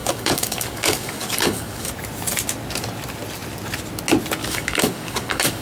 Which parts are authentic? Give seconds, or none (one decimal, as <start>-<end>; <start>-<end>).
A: 1.9-4.4